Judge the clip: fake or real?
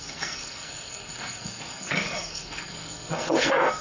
fake